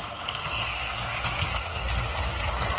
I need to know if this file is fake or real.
real